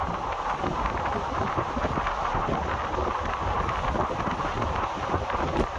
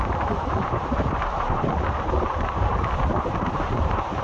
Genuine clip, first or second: first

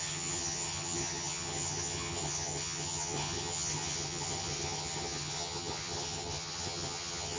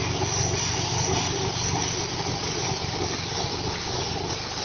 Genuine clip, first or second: second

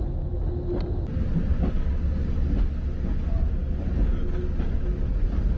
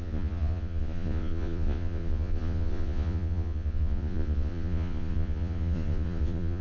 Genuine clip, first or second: first